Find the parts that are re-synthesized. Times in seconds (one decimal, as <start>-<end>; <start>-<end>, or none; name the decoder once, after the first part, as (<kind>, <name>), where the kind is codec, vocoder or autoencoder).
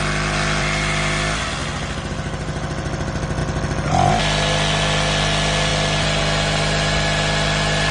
none